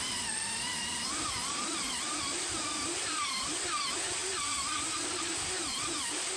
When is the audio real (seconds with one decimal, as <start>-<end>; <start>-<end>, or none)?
0.0-6.4